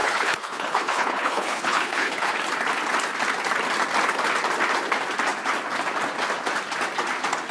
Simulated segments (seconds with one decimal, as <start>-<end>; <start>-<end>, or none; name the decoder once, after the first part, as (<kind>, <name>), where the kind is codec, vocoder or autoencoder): 0.0-2.3 (codec, HILCodec)